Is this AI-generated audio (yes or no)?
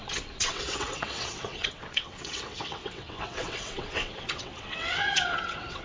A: yes